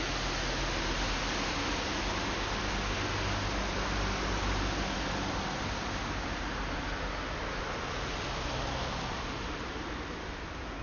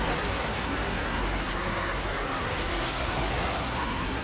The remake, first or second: second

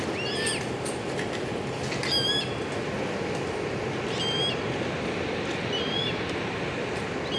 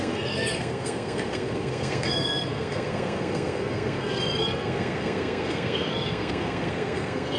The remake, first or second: second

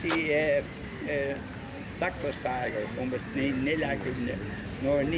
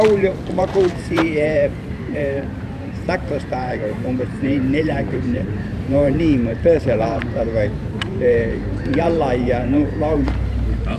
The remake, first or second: second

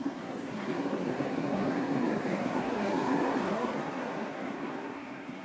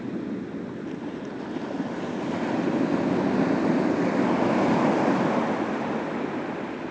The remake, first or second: first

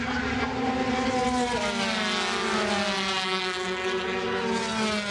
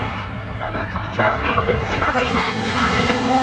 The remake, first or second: second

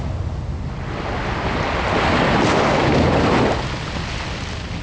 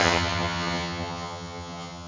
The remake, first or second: second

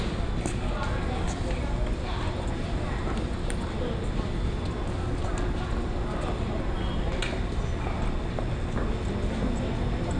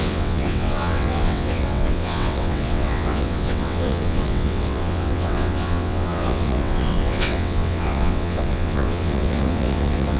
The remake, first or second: second